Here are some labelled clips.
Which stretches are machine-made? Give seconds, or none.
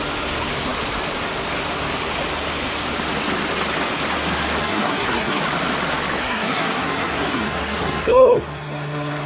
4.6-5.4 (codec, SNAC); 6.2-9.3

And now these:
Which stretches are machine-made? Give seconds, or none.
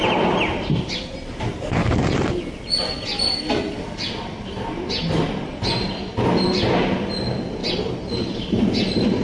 none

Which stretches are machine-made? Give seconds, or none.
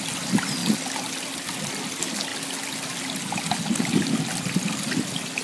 none